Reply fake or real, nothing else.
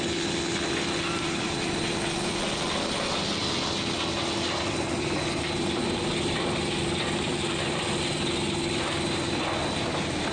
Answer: real